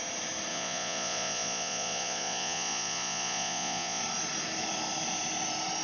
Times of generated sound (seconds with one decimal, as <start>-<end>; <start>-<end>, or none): 0.5-4.0